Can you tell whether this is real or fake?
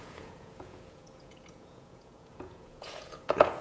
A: fake